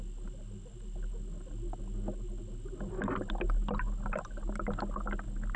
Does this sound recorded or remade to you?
recorded